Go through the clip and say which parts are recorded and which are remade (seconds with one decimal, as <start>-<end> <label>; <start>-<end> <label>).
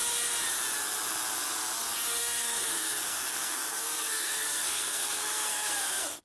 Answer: 0.0-2.2 recorded; 2.2-6.2 remade